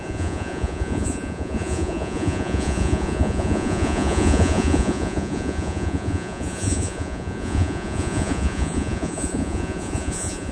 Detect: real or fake fake